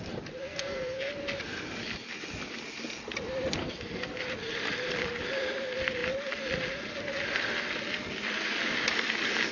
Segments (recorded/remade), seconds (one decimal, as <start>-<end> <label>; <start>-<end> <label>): 0.0-0.4 recorded; 0.4-1.1 remade; 1.1-3.6 recorded; 3.6-4.2 remade; 4.2-9.5 recorded